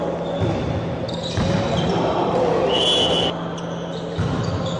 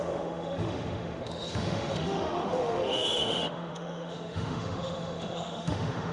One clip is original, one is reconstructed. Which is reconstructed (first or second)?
second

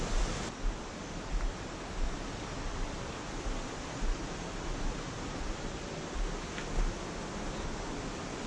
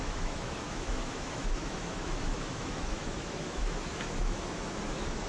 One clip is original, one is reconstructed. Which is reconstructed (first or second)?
second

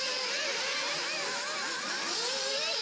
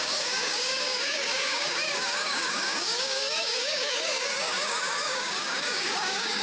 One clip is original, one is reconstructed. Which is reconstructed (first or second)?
second